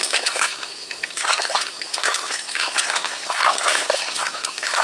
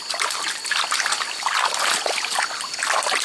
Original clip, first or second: second